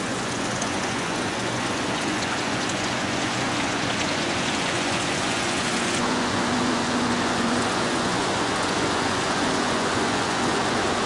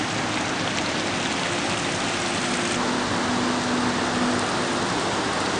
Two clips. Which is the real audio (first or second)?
second